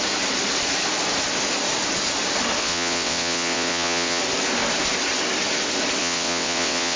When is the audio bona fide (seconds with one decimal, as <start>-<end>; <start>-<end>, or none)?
0.0-2.6; 4.2-6.0